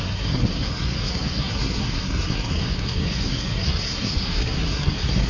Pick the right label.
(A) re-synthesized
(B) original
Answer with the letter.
A